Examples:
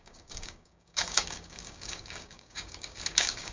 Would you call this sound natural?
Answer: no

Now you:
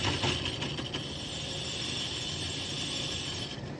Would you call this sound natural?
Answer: yes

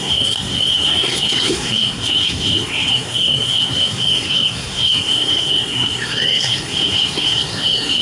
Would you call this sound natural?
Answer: no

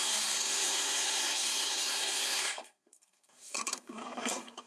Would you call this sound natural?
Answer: no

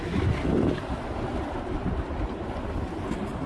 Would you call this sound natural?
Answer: yes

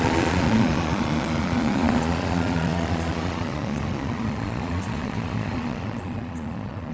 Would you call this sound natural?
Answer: no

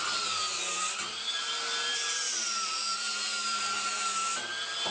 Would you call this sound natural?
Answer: no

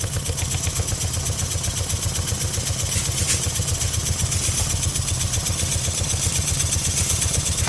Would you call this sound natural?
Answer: yes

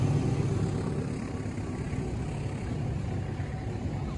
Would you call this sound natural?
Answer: yes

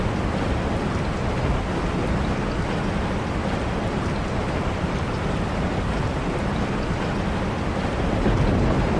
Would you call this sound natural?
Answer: yes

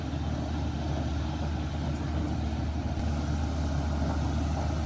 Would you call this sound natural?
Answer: yes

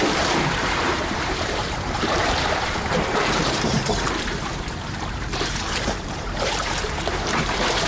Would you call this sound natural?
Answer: no